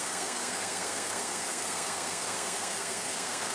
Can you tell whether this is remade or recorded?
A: remade